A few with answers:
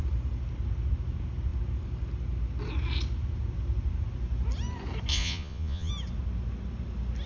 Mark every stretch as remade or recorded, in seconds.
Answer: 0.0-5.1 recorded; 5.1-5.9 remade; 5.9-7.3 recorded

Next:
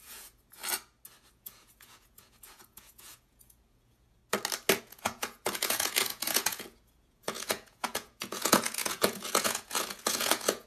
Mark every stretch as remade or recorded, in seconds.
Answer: 0.0-0.6 remade; 0.6-1.3 recorded; 1.3-4.2 remade; 4.2-4.8 recorded; 4.8-10.7 remade

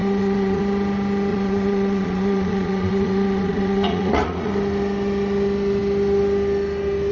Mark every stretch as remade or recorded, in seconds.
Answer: 0.0-0.6 remade; 0.6-1.3 recorded; 1.3-4.5 remade; 4.5-7.1 recorded

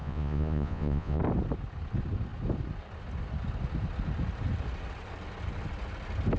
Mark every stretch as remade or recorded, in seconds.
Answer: 0.0-1.2 remade; 1.2-6.4 recorded

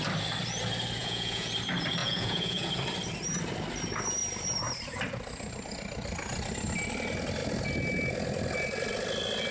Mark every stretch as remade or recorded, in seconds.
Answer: 0.0-1.0 recorded; 1.0-1.5 remade; 1.5-2.0 recorded; 2.0-2.7 remade; 2.7-9.5 recorded

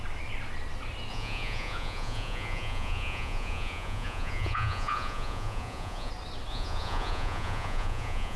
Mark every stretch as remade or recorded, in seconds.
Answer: 0.0-1.1 recorded; 1.1-6.1 remade; 6.1-6.5 recorded; 6.5-8.4 remade

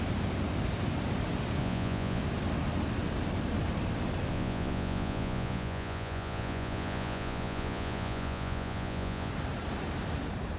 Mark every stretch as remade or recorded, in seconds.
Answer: 0.0-1.6 recorded; 1.6-2.2 remade; 2.2-4.3 recorded; 4.3-9.3 remade; 9.3-10.6 recorded